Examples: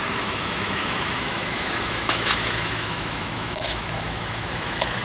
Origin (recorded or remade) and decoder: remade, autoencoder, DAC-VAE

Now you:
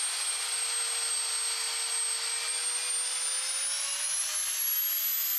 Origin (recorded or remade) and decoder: recorded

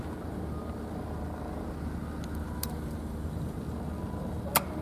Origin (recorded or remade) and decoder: recorded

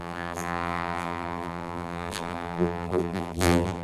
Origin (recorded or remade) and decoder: remade, vocoder, BigVGAN v2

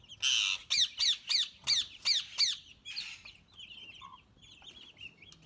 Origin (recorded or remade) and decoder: recorded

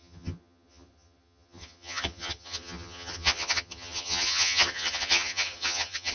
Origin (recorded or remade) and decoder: remade, vocoder, HiFi-GAN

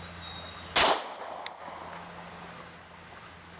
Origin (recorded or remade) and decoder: recorded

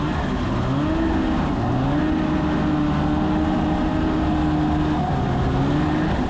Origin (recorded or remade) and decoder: recorded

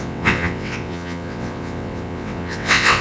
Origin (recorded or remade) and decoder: remade, vocoder, WaveNeXt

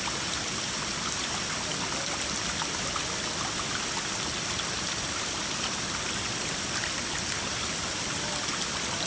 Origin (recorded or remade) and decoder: recorded